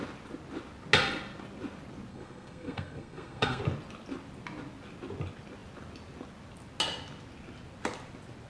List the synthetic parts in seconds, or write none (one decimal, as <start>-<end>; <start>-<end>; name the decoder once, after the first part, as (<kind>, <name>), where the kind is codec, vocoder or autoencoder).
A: 2.1-3.6 (codec, SNAC)